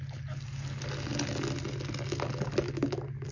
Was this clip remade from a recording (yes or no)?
no